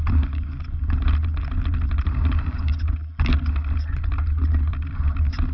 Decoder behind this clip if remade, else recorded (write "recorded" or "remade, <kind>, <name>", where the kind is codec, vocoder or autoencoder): recorded